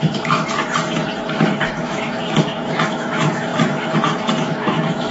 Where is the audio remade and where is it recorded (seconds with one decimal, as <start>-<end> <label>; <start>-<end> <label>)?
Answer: 0.0-0.6 remade; 0.6-1.3 recorded; 1.3-5.1 remade